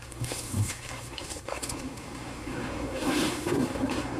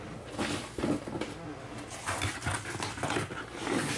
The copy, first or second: first